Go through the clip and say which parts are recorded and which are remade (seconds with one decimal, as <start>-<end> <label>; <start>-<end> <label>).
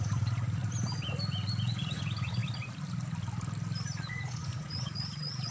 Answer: 0.0-0.6 remade; 0.6-1.6 recorded; 1.6-2.4 remade; 2.4-4.1 recorded; 4.1-5.5 remade